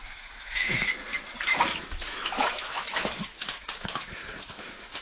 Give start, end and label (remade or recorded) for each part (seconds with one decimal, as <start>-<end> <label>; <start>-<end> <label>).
0.0-0.9 remade; 0.9-1.7 recorded; 1.7-5.0 remade